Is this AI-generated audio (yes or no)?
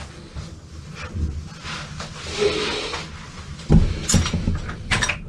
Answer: no